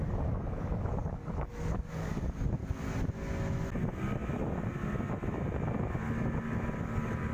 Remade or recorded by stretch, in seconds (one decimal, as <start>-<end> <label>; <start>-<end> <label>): 0.0-2.6 remade; 2.6-6.8 recorded; 6.8-7.3 remade